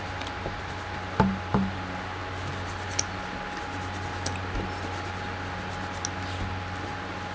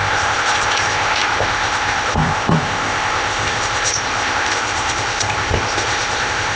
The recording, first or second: first